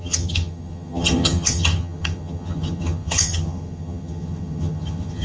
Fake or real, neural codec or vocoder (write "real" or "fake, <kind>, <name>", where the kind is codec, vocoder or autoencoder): fake, vocoder, HiFi-GAN